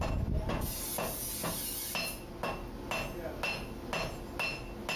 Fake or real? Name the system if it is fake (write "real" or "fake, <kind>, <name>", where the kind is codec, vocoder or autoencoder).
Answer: real